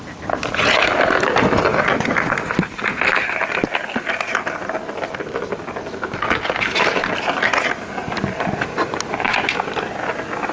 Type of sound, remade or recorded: recorded